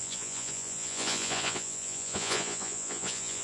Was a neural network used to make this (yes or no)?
yes